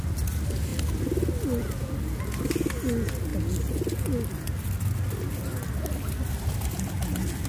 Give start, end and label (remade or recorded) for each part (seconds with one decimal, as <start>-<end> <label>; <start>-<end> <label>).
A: 0.0-7.5 recorded